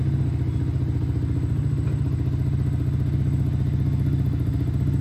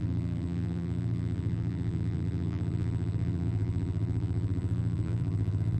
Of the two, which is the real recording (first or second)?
first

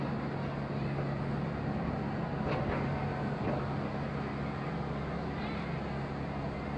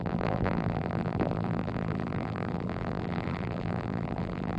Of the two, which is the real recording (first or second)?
first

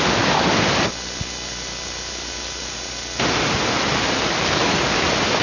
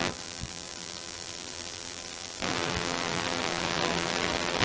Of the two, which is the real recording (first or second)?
first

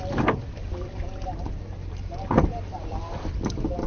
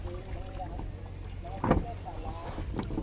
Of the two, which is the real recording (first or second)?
second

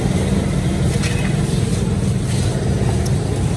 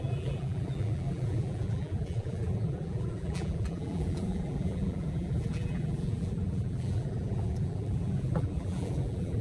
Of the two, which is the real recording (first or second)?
first